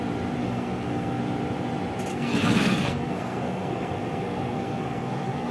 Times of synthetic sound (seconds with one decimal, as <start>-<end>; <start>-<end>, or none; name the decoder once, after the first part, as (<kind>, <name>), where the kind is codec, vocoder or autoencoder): 0.4-1.2 (codec, SNAC); 2.1-5.5